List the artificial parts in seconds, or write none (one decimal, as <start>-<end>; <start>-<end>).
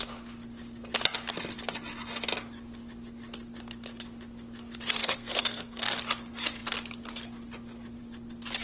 5.0-6.0